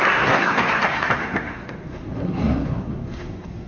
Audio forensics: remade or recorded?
remade